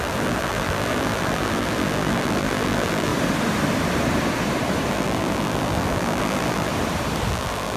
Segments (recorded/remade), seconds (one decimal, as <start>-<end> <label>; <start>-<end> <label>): 0.0-3.1 remade; 3.1-4.9 recorded; 4.9-6.7 remade; 6.7-7.3 recorded; 7.3-7.8 remade